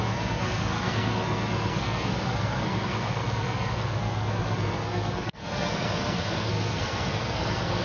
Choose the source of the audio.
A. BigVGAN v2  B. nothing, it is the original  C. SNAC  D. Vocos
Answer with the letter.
C